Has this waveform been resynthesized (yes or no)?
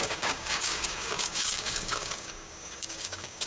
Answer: yes